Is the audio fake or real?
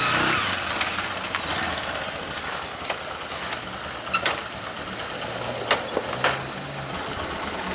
real